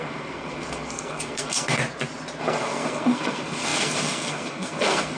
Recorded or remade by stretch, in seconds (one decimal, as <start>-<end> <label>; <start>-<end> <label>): 0.0-1.8 remade; 1.8-2.4 recorded; 2.4-5.2 remade